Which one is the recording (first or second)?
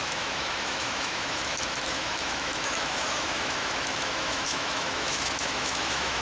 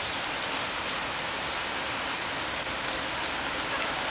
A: second